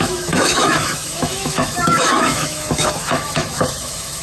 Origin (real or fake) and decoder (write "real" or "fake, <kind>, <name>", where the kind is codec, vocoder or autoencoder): fake, autoencoder, DAC-VAE